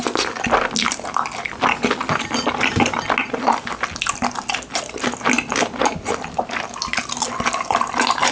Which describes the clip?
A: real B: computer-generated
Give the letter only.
A